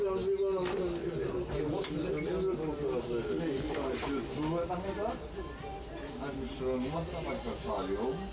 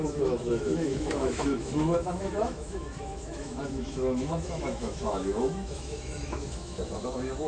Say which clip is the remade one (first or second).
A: second